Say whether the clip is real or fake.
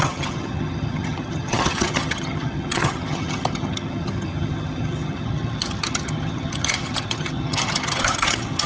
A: fake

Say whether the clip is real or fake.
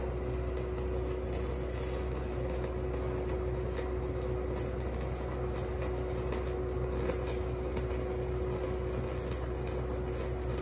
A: real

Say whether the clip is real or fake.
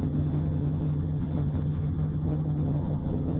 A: fake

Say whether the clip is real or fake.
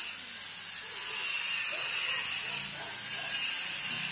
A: real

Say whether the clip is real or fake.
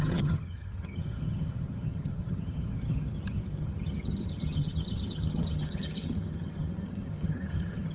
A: fake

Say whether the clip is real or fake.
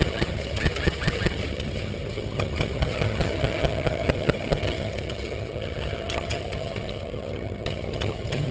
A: fake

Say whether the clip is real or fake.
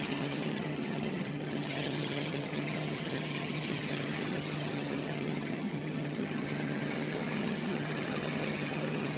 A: fake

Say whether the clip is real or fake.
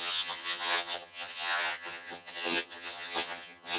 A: fake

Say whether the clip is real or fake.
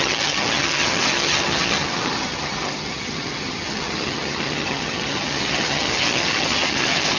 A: fake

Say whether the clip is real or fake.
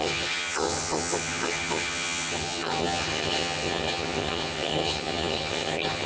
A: fake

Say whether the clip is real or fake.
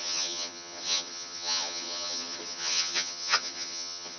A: fake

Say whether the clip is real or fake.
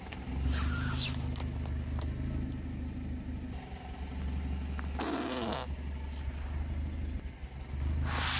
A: real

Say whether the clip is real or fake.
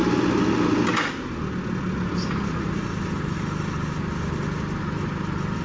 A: real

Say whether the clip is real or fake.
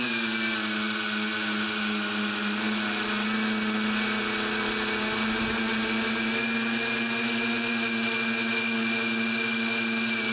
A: real